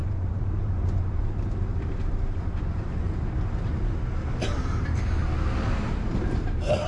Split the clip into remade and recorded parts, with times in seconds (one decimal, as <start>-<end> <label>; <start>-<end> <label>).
0.0-5.2 remade; 5.2-5.7 recorded; 5.7-6.9 remade